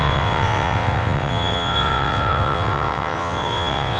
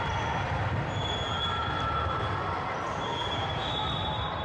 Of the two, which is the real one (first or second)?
second